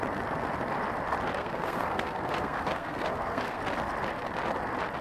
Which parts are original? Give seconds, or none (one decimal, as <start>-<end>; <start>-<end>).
0.0-1.4; 3.6-5.0